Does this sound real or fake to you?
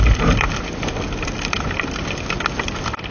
real